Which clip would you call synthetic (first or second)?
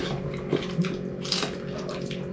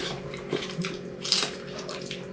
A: second